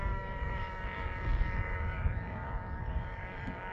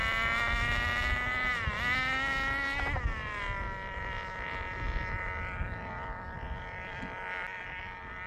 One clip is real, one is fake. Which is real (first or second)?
second